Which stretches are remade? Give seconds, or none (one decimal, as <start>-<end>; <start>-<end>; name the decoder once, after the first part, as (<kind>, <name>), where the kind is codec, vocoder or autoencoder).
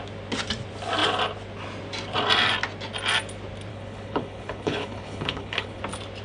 3.7-5.8 (codec, HILCodec)